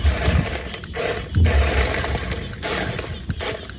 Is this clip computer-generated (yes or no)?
no